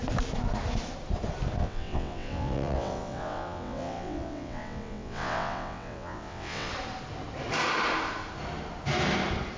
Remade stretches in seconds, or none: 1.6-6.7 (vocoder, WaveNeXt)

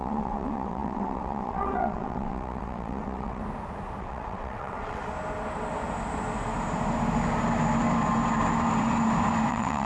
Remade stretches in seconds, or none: 0.0-3.4 (vocoder, WaveNeXt); 4.0-5.0; 9.5-9.9

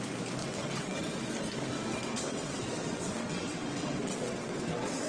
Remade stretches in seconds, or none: 0.4-1.0 (vocoder, WaveNeXt); 1.9-5.1

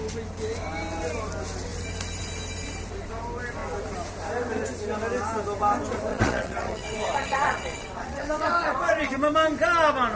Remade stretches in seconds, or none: 6.1-9.1 (vocoder, WaveNeXt)

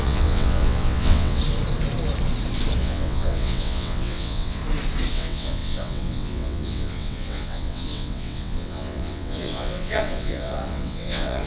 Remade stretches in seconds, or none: 0.0-1.4 (vocoder, WaveNeXt); 2.8-4.6; 5.1-11.5